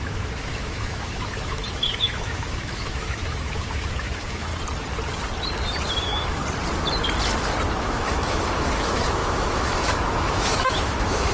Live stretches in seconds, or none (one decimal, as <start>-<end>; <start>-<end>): 4.5-6.0; 6.4-7.7